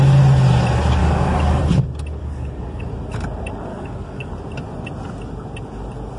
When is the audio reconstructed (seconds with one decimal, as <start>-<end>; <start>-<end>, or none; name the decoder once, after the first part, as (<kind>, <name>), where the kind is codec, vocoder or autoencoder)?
1.0-1.6 (codec, DAC); 2.2-2.8; 3.7-4.3